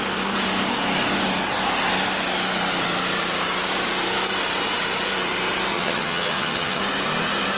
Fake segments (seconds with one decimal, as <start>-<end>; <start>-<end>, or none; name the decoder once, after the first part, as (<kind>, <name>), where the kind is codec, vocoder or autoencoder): 5.7-6.8 (vocoder, HiFi-GAN)